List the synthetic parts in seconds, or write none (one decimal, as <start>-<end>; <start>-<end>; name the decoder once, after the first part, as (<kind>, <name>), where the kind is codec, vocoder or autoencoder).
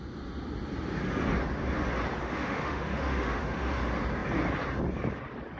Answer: 2.2-3.8 (autoencoder, DAC-VAE)